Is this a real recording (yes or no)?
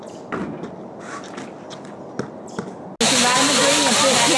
yes